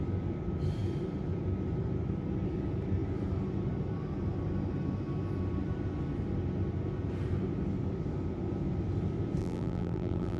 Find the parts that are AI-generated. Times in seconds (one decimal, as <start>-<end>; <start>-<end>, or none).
9.4-10.4